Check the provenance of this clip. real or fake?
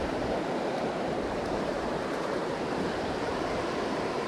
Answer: fake